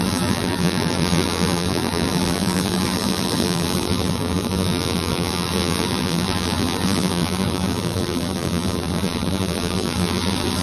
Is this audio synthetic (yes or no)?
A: yes